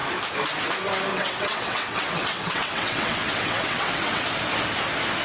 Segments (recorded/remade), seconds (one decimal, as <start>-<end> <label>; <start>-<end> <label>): 0.0-1.1 recorded; 1.1-4.2 remade; 4.2-5.2 recorded

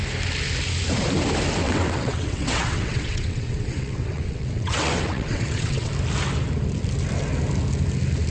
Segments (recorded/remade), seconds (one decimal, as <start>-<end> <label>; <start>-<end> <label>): 0.0-1.6 recorded; 1.6-5.9 remade; 5.9-8.3 recorded